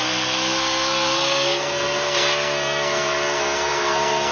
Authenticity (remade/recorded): remade